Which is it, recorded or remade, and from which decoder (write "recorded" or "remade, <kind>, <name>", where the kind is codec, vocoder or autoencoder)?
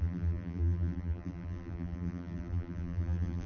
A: remade, vocoder, BigVGAN v2